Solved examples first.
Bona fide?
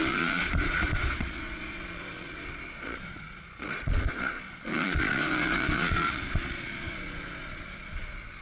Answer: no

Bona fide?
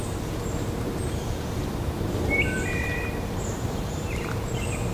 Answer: no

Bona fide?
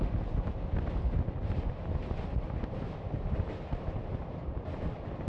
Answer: yes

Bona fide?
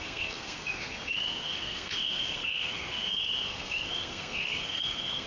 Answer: no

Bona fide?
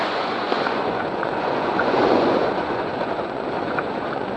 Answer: no